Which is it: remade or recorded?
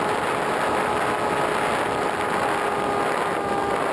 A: recorded